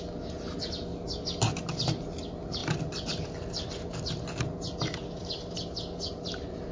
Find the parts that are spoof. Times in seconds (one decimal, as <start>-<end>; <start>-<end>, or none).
none